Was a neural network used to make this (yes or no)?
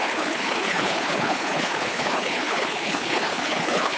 yes